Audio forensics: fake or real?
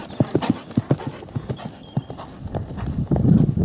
real